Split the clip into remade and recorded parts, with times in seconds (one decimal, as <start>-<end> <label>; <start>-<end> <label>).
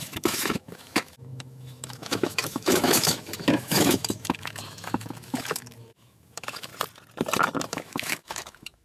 0.0-6.7 remade; 6.7-7.7 recorded; 7.7-8.8 remade